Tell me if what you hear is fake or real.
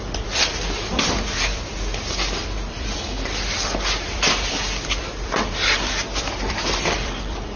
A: fake